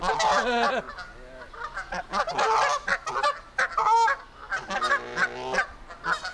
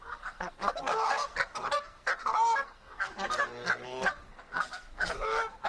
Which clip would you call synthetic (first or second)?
second